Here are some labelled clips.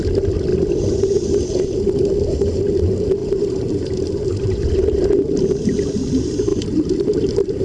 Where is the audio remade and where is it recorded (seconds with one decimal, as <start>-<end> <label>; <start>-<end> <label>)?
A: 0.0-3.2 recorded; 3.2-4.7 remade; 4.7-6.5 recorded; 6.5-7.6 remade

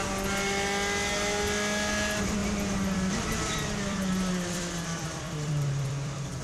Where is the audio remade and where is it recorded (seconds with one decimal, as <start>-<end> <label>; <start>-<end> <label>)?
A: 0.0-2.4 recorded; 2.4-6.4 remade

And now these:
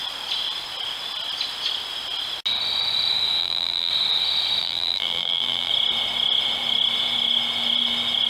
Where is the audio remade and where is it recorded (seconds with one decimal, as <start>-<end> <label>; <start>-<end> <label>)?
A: 0.0-3.4 recorded; 3.4-3.9 remade; 3.9-4.6 recorded; 4.6-5.7 remade; 5.7-8.3 recorded

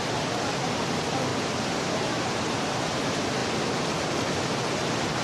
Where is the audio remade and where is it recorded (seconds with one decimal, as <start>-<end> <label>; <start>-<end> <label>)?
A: 0.0-1.3 recorded; 1.3-2.8 remade; 2.8-5.2 recorded

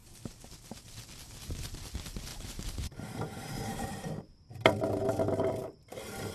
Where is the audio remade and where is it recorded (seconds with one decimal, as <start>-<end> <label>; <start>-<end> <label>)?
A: 0.0-2.3 recorded; 2.3-4.1 remade; 4.1-6.3 recorded

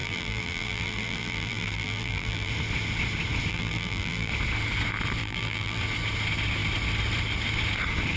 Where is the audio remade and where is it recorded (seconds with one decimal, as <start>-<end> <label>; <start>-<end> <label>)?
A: 0.0-2.5 remade; 2.5-3.5 recorded; 3.5-4.3 remade; 4.3-5.2 recorded; 5.2-5.8 remade; 5.8-8.2 recorded